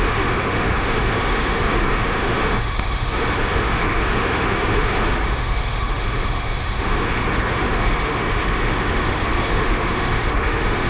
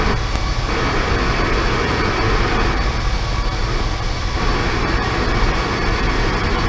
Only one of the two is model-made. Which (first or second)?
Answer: first